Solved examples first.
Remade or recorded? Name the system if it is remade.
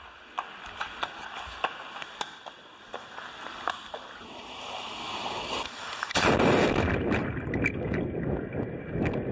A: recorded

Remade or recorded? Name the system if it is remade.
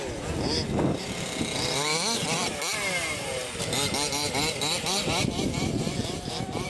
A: recorded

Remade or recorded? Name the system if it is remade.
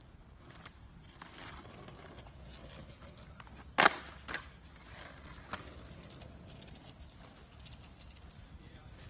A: recorded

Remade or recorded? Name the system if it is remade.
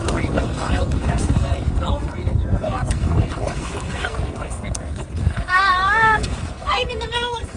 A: remade, codec, SNAC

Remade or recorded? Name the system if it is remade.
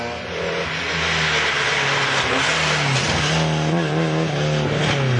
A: recorded